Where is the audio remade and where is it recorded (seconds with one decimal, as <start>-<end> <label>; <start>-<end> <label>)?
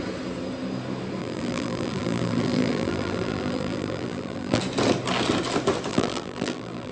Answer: 0.0-1.2 recorded; 1.2-4.6 remade; 4.6-5.9 recorded; 5.9-6.9 remade